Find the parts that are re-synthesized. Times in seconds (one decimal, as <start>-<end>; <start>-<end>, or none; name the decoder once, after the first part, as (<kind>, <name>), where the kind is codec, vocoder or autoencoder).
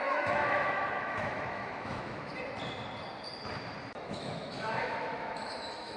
0.0-2.3 (autoencoder, DAC-VAE); 3.9-6.0